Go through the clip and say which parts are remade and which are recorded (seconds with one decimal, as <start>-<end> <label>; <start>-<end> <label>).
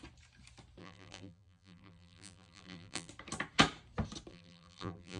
0.0-0.8 recorded; 0.8-3.1 remade; 3.1-4.3 recorded; 4.3-5.2 remade